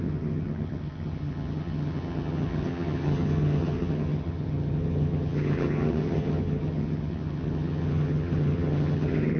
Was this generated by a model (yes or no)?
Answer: yes